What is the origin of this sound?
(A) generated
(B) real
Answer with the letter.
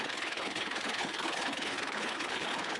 A